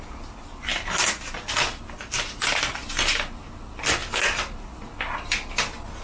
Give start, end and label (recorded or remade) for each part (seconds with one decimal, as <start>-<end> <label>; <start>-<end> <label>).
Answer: 0.0-0.7 recorded; 0.7-1.3 remade; 1.3-4.0 recorded; 4.0-4.7 remade; 4.7-6.0 recorded